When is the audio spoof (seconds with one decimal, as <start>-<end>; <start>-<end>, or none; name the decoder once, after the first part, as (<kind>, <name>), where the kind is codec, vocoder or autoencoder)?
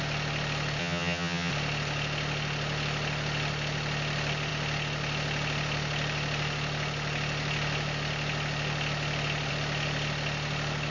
0.8-1.5 (vocoder, HiFi-GAN)